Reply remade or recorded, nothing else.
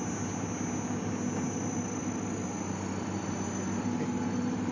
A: recorded